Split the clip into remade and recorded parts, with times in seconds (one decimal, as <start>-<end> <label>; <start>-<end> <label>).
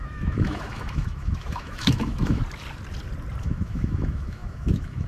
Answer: 0.0-2.4 remade; 2.4-3.4 recorded; 3.4-5.1 remade